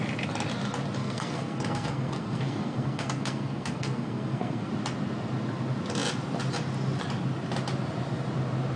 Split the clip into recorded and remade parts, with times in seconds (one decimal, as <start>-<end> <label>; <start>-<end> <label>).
0.0-1.0 recorded; 1.0-4.7 remade; 4.7-8.8 recorded